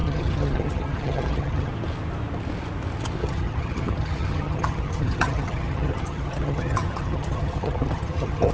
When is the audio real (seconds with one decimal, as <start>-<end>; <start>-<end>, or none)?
1.7-3.2